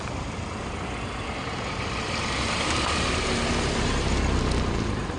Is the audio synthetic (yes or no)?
no